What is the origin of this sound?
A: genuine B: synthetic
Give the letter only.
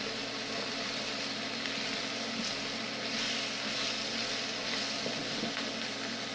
A